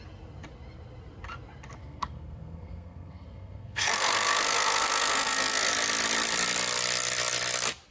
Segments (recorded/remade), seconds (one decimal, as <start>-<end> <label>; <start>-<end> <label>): 0.0-1.8 recorded; 1.8-5.7 remade; 5.7-7.9 recorded

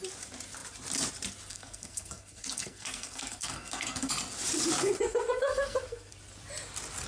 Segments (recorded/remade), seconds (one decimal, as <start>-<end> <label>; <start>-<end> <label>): 0.0-1.5 recorded; 1.5-4.1 remade; 4.1-4.8 recorded; 4.8-6.1 remade; 6.1-7.1 recorded

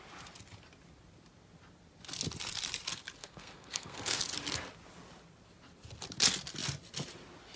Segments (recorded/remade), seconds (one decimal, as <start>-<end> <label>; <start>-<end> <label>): 0.0-3.2 recorded; 3.2-4.2 remade; 4.2-7.6 recorded